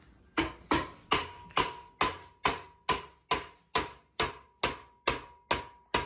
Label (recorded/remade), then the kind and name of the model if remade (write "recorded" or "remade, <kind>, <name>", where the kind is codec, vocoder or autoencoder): recorded